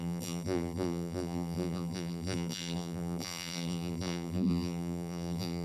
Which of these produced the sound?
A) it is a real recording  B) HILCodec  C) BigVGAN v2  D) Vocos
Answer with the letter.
C